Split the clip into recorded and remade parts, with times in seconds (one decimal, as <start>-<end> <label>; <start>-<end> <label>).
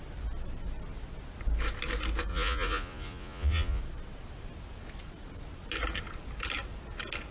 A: 0.0-2.3 recorded; 2.3-3.8 remade; 3.8-7.3 recorded